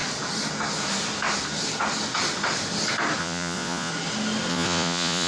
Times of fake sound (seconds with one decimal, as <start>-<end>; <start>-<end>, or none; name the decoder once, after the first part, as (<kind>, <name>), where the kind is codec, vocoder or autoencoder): 3.2-3.9 (vocoder, Vocos); 4.5-5.3